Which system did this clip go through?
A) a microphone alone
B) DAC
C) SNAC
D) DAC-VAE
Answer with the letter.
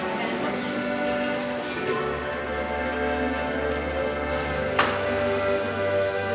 A